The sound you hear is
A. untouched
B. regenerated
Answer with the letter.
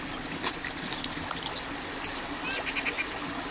A